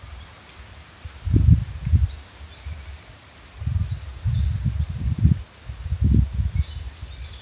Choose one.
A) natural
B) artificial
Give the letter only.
A